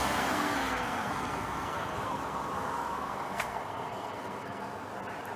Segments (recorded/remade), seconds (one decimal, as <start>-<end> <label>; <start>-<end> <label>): 0.0-4.9 remade; 4.9-5.4 recorded